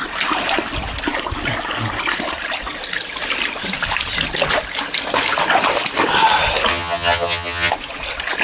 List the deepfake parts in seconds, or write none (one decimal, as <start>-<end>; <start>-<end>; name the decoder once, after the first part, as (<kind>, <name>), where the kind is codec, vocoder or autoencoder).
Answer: 6.7-7.7 (vocoder, HiFi-GAN)